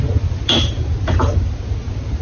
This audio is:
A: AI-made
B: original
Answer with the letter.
B